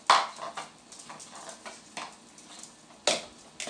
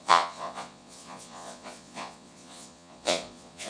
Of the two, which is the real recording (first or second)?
first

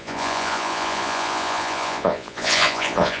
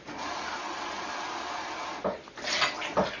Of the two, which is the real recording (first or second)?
second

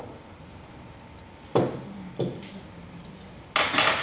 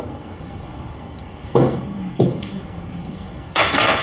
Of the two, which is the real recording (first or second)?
first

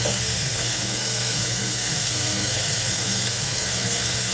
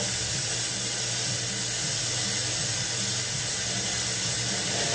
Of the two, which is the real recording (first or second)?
second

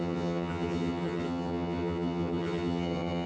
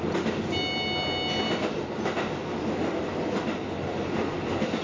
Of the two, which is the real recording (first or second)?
second